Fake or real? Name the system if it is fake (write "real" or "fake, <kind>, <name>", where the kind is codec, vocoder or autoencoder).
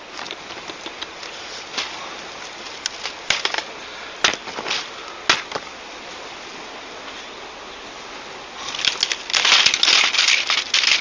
real